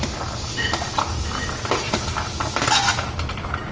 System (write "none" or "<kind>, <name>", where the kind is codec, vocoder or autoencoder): none